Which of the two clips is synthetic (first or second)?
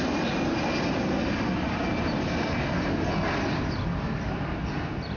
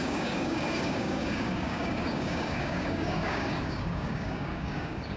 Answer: second